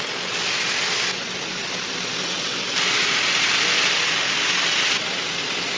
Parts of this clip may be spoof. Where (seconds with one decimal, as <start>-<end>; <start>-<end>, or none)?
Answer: 1.6-4.5